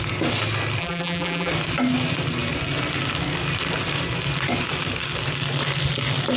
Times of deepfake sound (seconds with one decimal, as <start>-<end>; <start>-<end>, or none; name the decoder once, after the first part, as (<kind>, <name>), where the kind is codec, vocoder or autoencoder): 0.8-1.5 (vocoder, BigVGAN v2)